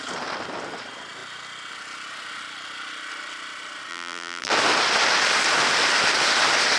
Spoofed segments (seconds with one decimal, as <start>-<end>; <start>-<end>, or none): 3.9-4.5